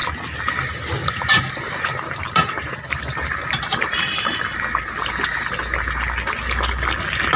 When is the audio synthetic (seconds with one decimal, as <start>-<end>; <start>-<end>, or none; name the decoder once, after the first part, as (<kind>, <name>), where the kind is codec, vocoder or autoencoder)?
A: 0.0-4.4 (vocoder, BigVGAN v2)